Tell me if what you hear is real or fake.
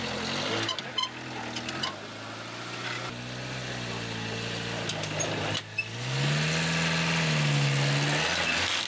real